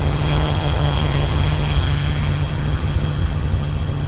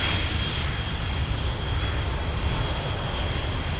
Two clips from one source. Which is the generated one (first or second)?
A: first